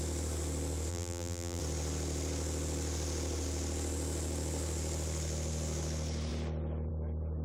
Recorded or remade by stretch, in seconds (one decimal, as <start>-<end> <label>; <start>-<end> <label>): 0.0-0.9 recorded; 0.9-1.6 remade; 1.6-7.4 recorded